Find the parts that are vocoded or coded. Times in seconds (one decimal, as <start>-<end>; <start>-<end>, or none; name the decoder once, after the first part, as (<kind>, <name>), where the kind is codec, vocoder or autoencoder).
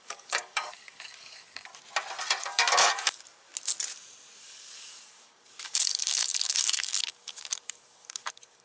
0.0-1.7 (codec, DAC); 2.4-3.5; 4.4-8.6